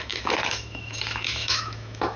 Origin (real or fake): fake